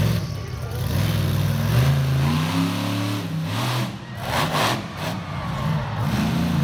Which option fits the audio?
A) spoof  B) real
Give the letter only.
B